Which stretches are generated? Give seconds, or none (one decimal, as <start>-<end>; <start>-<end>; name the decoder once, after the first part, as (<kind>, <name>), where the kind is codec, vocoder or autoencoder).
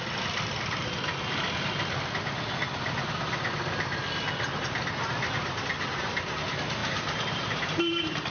6.8-8.3 (vocoder, BigVGAN v2)